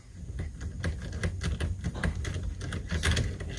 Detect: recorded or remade recorded